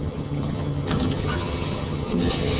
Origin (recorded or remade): remade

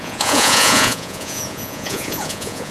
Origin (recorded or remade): remade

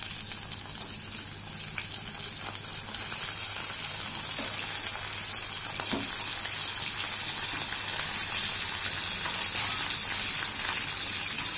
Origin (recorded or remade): recorded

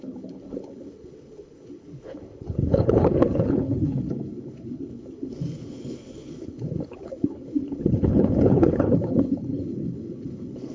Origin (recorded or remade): remade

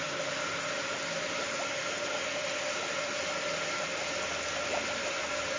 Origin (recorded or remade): recorded